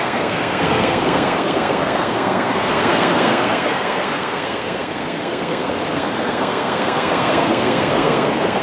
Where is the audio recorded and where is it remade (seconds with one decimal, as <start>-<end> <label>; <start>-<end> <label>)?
0.0-8.6 remade